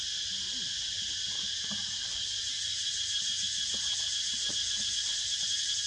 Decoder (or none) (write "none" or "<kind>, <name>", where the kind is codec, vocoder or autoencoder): none